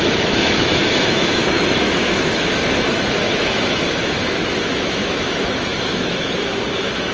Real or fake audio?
fake